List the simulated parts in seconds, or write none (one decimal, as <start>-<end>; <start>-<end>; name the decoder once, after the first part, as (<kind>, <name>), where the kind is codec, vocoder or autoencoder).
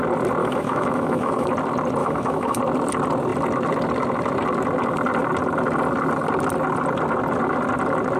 0.4-1.5 (autoencoder, DAC-VAE); 2.0-2.6